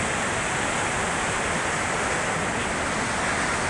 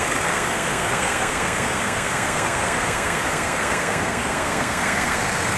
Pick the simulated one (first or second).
second